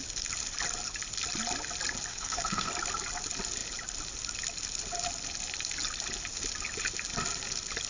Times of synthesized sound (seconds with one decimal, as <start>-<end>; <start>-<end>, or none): 2.1-2.7